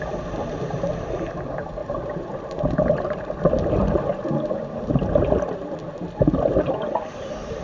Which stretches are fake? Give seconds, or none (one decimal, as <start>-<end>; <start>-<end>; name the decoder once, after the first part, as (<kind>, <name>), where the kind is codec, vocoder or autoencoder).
1.8-2.6 (vocoder, BigVGAN v2)